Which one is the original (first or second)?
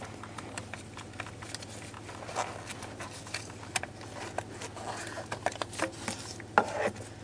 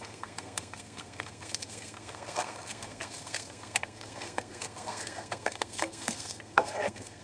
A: first